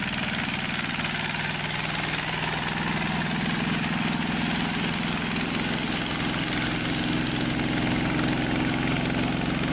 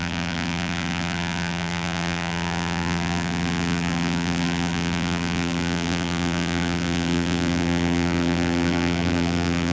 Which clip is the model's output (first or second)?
second